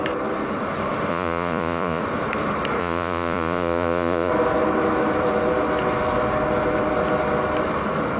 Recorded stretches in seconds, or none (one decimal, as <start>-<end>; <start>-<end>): 0.0-1.1; 2.0-2.8; 4.3-8.2